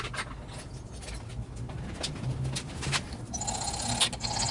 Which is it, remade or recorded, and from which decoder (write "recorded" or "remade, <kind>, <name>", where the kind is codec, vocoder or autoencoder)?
recorded